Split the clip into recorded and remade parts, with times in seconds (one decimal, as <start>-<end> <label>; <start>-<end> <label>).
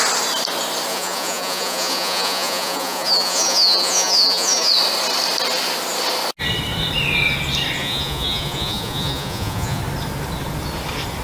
0.0-0.9 recorded; 0.9-4.7 remade; 4.7-7.8 recorded; 7.8-9.8 remade; 9.8-11.2 recorded